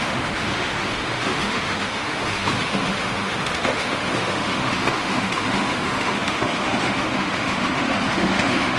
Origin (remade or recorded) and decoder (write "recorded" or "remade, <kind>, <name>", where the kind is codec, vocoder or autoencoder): remade, autoencoder, DAC-VAE